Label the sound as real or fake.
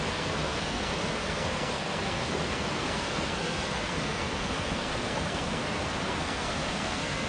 fake